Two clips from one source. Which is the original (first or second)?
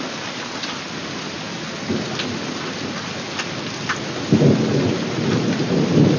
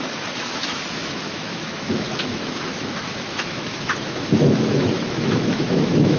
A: first